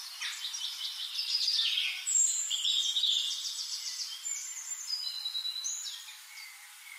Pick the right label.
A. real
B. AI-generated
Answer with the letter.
B